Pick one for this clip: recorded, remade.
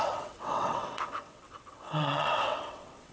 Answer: remade